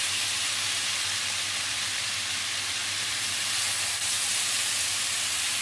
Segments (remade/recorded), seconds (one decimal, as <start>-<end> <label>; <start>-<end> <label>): 0.0-2.8 recorded; 2.8-3.4 remade; 3.4-4.3 recorded; 4.3-5.6 remade